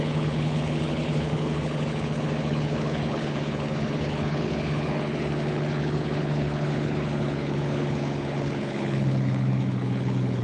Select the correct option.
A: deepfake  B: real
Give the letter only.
A